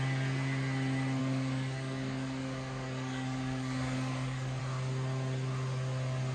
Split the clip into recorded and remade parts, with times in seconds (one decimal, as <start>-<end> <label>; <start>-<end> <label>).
0.0-1.2 recorded; 1.2-4.6 remade; 4.6-6.3 recorded